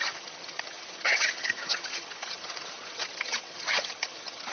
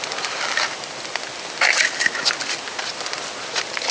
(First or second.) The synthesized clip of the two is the first